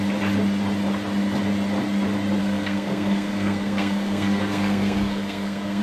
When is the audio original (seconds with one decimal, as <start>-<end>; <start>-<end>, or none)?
0.0-2.4

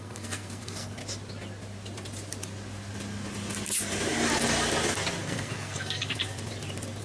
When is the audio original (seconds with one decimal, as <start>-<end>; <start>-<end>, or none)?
1.0-5.2; 6.2-7.0

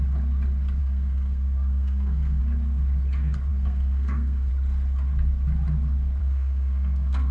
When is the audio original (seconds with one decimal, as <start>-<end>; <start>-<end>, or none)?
0.0-0.8; 2.4-3.5; 4.5-6.2

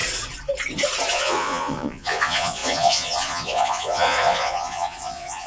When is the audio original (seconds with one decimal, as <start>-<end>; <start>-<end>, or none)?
0.0-1.1